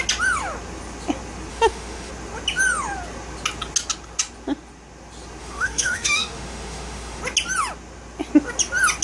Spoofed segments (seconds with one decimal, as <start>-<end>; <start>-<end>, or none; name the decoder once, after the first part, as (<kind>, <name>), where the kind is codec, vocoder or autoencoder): 1.5-2.1 (autoencoder, DAC-VAE); 5.4-7.2